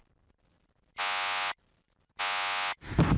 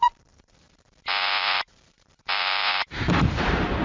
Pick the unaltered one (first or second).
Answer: first